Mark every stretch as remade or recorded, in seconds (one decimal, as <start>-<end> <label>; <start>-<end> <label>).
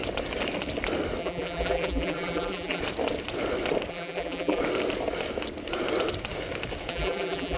0.0-1.2 recorded; 1.2-2.8 remade; 2.8-3.9 recorded; 3.9-4.6 remade; 4.6-6.9 recorded; 6.9-7.6 remade